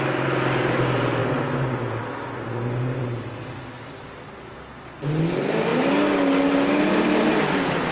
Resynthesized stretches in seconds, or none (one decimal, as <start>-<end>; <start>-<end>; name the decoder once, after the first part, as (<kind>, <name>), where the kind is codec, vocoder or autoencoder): none